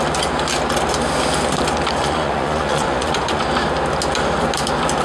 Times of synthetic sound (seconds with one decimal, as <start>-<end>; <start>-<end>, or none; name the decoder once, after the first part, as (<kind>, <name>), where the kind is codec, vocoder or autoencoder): 2.0-3.4 (vocoder, Vocos)

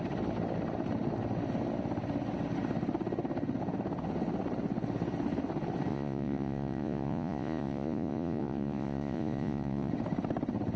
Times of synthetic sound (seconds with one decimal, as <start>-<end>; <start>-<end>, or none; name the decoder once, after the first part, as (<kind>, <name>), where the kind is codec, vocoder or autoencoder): 5.9-9.9 (vocoder, Vocos)

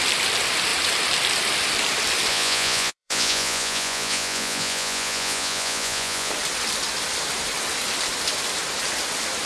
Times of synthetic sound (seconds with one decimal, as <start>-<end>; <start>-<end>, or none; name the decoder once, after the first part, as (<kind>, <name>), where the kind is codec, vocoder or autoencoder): 2.3-6.3 (vocoder, Vocos)

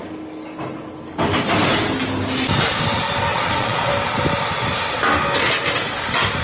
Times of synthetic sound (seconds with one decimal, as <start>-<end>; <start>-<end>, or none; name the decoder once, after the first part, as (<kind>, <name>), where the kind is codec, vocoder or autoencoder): 3.3-3.9 (vocoder, Vocos)